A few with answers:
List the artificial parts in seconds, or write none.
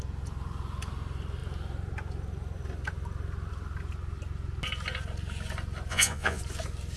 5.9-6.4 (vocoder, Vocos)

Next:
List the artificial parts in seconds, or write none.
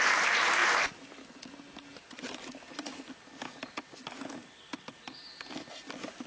none